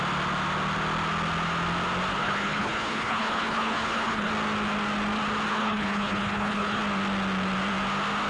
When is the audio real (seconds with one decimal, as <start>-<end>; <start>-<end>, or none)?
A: 0.0-2.1; 4.3-5.5; 6.8-8.3